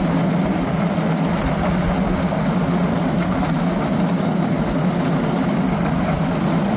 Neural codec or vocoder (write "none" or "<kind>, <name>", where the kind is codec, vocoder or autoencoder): none